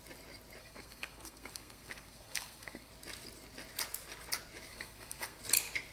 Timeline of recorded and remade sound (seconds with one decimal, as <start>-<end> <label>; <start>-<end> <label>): 0.0-0.6 recorded; 0.6-2.9 remade; 2.9-4.7 recorded; 4.7-5.4 remade; 5.4-5.9 recorded